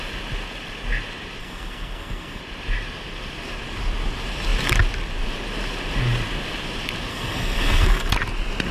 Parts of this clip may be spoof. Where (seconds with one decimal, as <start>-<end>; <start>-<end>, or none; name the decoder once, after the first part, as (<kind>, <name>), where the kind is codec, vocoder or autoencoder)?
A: 1.4-2.4 (codec, SNAC); 7.1-8.1

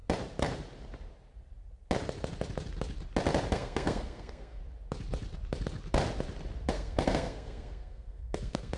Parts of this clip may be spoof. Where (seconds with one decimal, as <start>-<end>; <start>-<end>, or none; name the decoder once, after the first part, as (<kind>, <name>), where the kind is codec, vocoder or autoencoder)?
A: 3.5-4.6 (codec, SNAC); 6.7-8.8

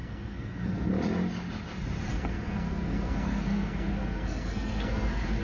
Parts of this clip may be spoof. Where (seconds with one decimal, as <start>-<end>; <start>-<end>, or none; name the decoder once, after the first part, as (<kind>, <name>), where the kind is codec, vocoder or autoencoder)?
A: 0.0-0.9 (codec, SNAC); 2.1-5.4

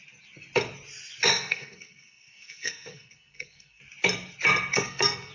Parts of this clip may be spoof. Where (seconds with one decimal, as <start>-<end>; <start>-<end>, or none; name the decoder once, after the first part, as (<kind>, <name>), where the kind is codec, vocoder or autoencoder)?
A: 1.3-3.8 (codec, SNAC); 4.7-5.3

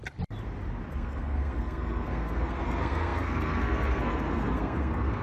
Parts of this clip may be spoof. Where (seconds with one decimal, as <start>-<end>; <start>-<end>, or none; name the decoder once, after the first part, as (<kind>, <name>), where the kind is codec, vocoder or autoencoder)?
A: 0.9-5.2 (codec, SNAC)